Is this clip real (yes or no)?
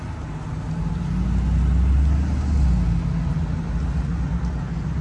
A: yes